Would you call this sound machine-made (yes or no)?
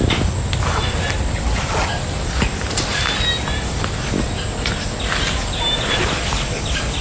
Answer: no